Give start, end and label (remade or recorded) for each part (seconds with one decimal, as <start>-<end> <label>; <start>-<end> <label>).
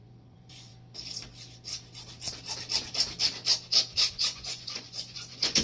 0.0-0.7 remade; 0.7-4.1 recorded; 4.1-5.6 remade